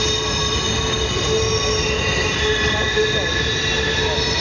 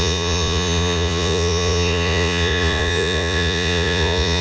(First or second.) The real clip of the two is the first